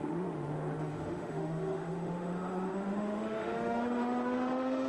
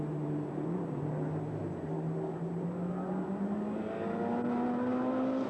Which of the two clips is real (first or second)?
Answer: second